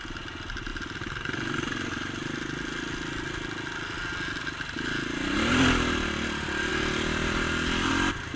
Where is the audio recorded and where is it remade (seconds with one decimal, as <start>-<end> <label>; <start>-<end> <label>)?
0.0-6.7 recorded; 6.7-7.9 remade; 7.9-8.4 recorded